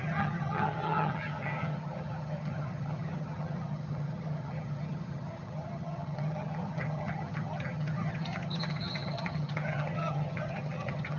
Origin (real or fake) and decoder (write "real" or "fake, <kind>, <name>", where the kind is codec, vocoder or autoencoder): fake, vocoder, HiFi-GAN